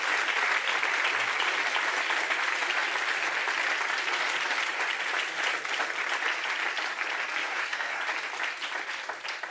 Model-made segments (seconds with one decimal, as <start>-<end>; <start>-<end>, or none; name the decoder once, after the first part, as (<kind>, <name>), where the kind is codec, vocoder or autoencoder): 7.4-8.0 (codec, SNAC)